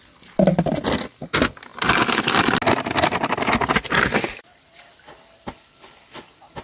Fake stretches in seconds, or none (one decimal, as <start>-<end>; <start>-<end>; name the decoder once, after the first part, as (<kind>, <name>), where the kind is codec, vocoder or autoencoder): none